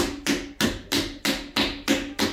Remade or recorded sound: recorded